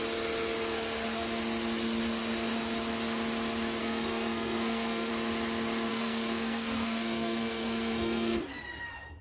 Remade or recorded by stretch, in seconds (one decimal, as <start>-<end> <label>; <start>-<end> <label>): 0.0-3.8 recorded; 3.8-5.1 remade; 5.1-5.9 recorded; 5.9-8.4 remade; 8.4-9.2 recorded